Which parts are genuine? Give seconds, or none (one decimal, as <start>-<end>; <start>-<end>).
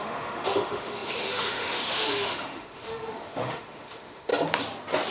4.3-5.1